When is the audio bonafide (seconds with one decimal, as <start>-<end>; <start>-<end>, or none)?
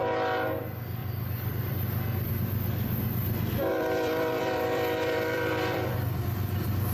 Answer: 0.0-1.0; 2.3-3.7